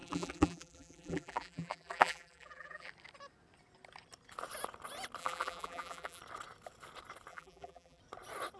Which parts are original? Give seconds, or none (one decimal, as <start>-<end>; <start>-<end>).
2.9-5.2; 6.2-7.3; 8.0-8.6